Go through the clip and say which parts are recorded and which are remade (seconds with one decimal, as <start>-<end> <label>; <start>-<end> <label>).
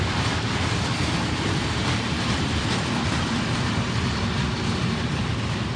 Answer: 0.0-1.8 recorded; 1.8-5.3 remade; 5.3-5.8 recorded